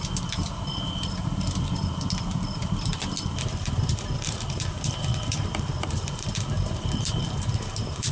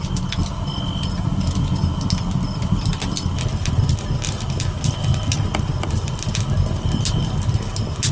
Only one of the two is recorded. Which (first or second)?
second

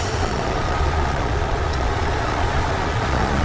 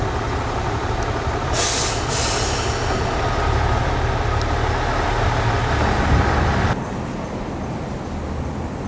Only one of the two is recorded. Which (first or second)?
second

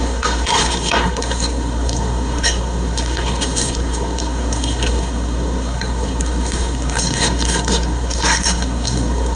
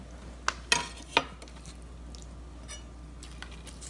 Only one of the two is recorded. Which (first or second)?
second